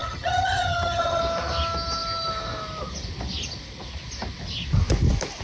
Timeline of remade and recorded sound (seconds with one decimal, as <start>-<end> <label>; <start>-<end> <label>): 0.0-1.2 remade; 1.2-5.4 recorded